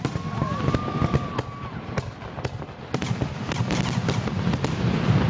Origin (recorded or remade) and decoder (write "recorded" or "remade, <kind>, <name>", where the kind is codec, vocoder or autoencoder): recorded